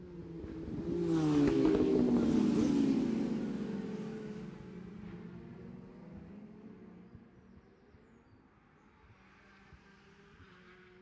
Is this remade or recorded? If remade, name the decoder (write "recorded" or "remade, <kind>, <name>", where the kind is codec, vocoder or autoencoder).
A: recorded